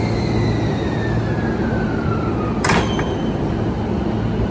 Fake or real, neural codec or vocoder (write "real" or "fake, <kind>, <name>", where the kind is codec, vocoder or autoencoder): real